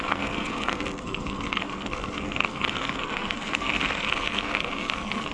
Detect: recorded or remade remade